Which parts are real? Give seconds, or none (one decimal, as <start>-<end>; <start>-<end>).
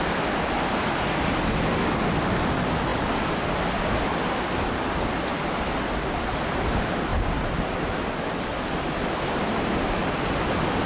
0.0-10.9